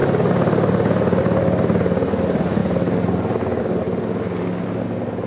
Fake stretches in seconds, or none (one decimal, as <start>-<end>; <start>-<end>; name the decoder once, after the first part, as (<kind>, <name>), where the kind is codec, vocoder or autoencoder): none